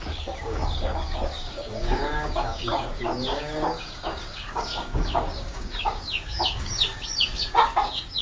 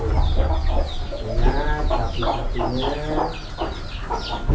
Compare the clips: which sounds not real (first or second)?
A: first